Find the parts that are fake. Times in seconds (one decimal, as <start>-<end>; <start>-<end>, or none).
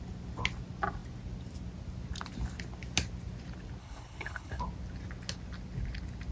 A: 3.8-4.6